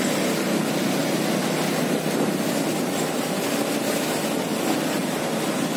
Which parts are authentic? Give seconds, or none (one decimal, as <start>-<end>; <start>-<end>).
0.0-5.8